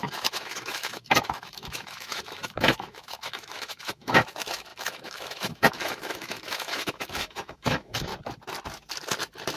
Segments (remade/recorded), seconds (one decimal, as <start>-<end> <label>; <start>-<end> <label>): 0.0-8.1 remade; 8.1-9.6 recorded